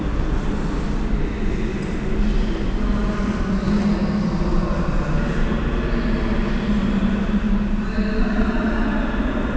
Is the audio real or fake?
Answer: real